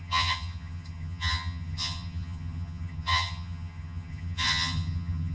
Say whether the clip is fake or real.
fake